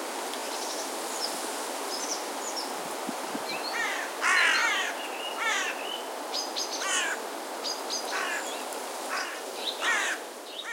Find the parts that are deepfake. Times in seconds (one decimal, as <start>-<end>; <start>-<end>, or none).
none